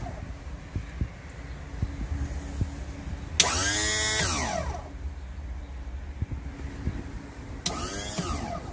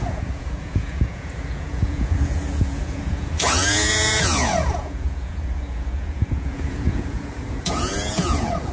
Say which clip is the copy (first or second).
second